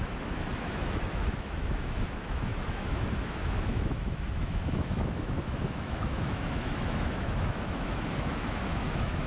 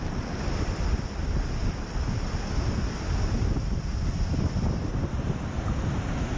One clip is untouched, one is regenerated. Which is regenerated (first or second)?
first